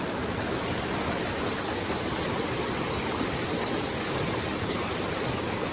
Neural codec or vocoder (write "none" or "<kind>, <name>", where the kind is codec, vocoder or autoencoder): none